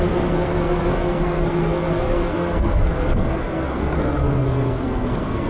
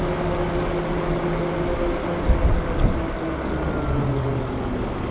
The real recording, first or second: second